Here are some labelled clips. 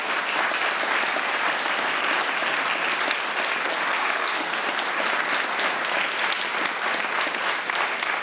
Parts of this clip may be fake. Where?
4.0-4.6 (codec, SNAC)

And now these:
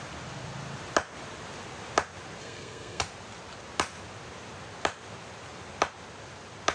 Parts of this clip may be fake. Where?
2.4-3.0 (codec, SNAC)